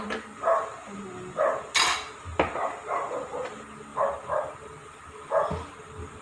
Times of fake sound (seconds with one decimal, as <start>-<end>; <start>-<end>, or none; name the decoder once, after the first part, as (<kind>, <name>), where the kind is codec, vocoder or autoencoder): none

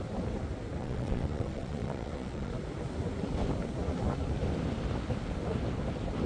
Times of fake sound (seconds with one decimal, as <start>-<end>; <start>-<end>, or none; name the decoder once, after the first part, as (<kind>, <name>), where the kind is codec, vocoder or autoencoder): 0.8-2.5 (vocoder, Vocos)

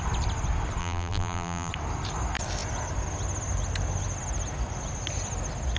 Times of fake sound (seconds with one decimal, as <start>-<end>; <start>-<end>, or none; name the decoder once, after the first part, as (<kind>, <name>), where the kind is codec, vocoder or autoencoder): 0.8-1.7 (vocoder, BigVGAN v2)

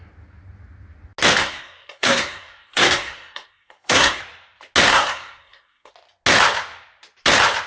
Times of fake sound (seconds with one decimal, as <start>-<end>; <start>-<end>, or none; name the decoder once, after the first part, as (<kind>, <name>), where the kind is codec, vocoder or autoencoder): 1.4-4.2 (codec, SNAC); 4.9-5.9

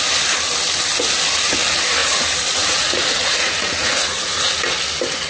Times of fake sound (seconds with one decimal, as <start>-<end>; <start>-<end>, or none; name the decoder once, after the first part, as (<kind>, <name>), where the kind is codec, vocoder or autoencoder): 2.0-4.5 (vocoder, Vocos)

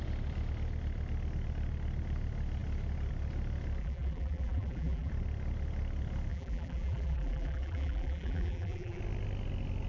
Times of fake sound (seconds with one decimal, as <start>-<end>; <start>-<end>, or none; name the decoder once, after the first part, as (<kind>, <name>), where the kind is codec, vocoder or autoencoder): 3.8-5.1 (vocoder, BigVGAN v2); 6.3-9.0

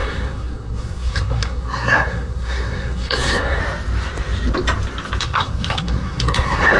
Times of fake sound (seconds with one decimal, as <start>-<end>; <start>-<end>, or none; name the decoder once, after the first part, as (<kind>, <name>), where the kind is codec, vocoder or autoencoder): 0.0-3.6 (codec, SNAC); 5.2-6.8

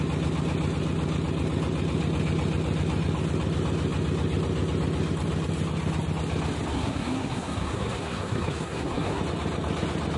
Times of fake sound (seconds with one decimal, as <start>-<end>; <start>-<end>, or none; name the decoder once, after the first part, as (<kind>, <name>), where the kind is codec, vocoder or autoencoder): 6.7-9.2 (codec, SNAC)